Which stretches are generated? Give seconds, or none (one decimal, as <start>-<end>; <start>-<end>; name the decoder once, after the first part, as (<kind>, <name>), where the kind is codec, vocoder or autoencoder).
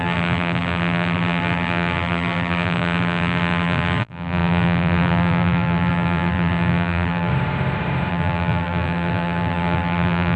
0.0-7.3 (vocoder, BigVGAN v2); 8.1-10.4